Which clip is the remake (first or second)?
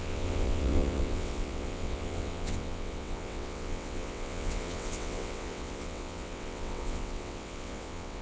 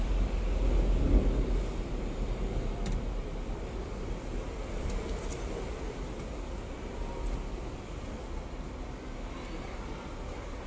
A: first